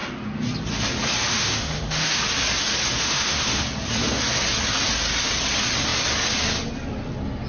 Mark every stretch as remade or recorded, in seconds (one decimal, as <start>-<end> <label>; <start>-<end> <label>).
0.0-1.3 recorded; 1.3-2.2 remade; 2.2-3.0 recorded; 3.0-3.6 remade; 3.6-7.5 recorded